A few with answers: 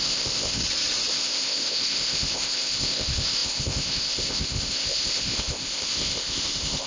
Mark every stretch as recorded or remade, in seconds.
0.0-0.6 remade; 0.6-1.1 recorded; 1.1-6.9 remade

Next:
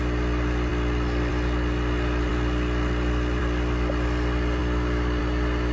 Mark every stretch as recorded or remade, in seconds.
0.0-5.7 recorded

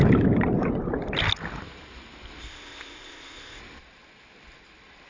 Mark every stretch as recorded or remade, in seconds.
0.0-2.4 recorded; 2.4-3.6 remade; 3.6-5.1 recorded

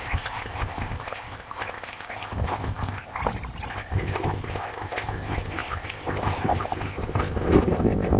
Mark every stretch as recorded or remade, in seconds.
0.0-3.2 remade; 3.2-3.7 recorded; 3.7-8.2 remade